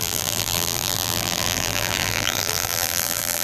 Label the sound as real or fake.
fake